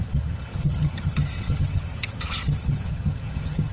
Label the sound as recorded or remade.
remade